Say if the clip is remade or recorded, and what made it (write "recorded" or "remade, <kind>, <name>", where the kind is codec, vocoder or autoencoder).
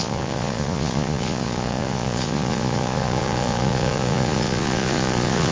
remade, vocoder, Vocos